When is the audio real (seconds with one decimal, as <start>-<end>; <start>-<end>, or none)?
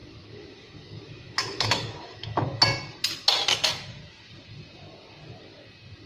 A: 2.6-3.5; 4.0-6.1